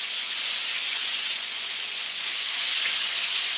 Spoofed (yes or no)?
yes